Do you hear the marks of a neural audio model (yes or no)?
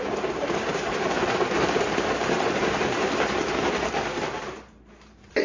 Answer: yes